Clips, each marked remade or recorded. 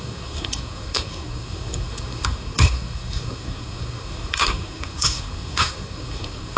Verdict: remade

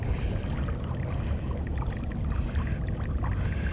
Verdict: recorded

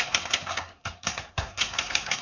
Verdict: remade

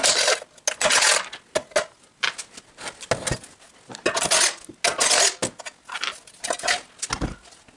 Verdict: recorded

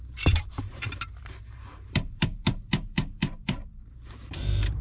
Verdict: remade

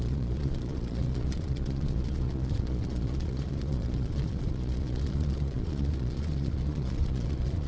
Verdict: remade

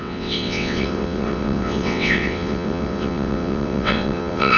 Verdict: remade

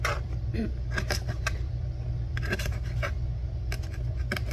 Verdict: recorded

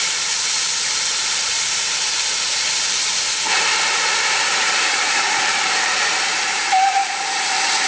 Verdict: remade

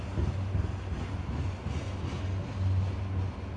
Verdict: recorded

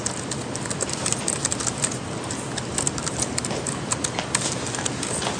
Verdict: recorded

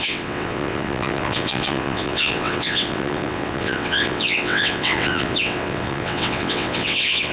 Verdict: remade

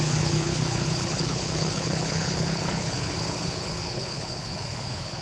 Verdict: remade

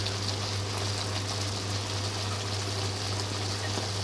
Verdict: recorded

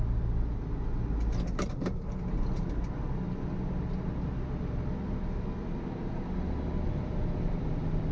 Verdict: recorded